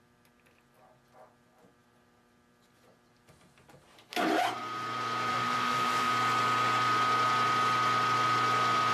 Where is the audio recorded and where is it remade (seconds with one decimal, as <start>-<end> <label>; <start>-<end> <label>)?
0.0-5.3 recorded; 5.3-6.1 remade; 6.1-8.9 recorded